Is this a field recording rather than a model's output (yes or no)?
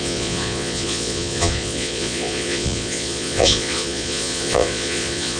no